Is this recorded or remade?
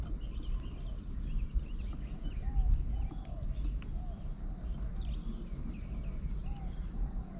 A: recorded